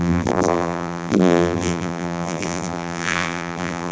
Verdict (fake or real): fake